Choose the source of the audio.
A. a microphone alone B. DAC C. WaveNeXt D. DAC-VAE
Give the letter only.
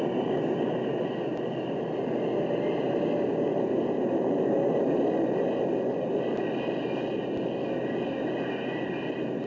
A